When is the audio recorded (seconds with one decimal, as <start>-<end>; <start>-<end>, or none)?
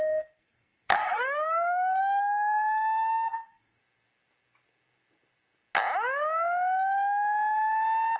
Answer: 3.8-8.2